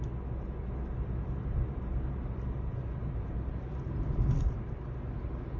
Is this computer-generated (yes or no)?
no